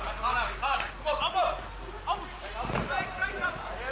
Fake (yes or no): no